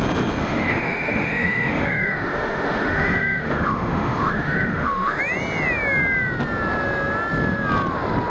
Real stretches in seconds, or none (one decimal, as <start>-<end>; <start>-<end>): 0.0-0.4; 5.2-8.3